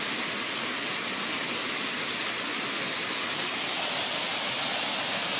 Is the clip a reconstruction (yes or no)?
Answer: no